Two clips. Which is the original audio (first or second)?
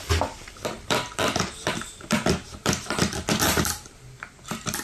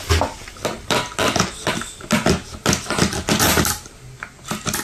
second